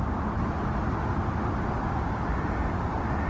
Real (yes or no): yes